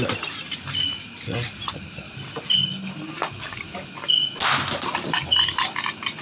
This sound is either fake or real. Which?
real